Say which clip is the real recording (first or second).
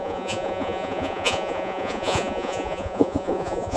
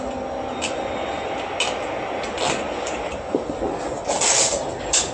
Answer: second